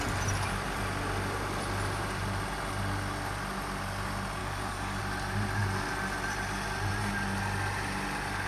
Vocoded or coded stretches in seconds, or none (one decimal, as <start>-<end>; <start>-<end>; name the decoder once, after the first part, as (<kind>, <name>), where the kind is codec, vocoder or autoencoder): 4.4-5.0 (codec, DAC)